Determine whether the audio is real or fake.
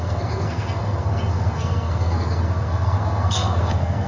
fake